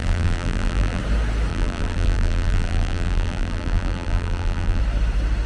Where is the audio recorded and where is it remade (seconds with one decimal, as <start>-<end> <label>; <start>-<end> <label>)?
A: 0.0-1.0 remade; 1.0-1.5 recorded; 1.5-4.8 remade; 4.8-5.5 recorded